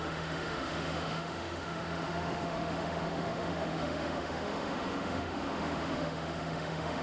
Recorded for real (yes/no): no